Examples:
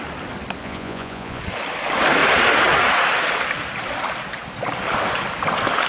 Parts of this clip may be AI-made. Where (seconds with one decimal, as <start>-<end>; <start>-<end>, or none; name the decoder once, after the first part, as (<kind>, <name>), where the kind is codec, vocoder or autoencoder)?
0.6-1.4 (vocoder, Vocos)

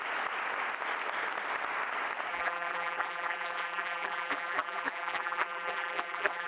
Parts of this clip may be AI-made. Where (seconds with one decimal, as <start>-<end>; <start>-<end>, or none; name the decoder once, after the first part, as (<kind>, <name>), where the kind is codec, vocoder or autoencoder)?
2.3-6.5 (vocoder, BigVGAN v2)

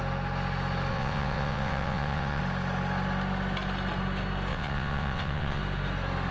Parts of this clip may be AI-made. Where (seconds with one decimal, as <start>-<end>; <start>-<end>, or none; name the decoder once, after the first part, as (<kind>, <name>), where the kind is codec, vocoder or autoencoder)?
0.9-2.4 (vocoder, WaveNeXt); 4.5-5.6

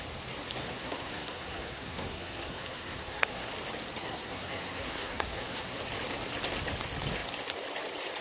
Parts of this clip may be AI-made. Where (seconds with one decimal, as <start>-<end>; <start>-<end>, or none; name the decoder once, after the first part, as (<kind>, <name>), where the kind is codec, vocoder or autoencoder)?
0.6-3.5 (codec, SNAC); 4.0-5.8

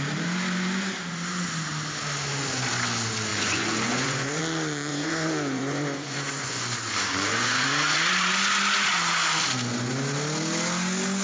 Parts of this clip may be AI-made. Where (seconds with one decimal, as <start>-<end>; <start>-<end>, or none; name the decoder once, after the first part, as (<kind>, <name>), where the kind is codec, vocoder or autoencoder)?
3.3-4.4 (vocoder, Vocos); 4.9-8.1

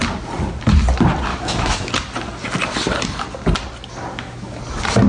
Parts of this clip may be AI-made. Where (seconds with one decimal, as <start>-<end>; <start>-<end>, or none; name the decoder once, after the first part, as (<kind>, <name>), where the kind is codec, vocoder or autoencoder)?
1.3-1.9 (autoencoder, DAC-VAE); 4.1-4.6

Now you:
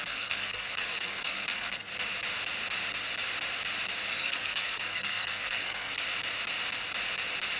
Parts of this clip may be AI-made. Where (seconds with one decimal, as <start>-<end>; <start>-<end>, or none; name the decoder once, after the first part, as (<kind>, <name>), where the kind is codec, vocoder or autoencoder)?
0.0-1.9 (codec, SNAC); 4.1-6.0